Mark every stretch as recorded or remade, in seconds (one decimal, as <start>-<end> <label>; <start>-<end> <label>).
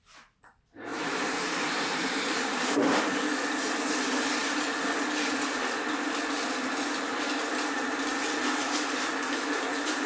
0.0-0.9 recorded; 0.9-3.0 remade; 3.0-10.1 recorded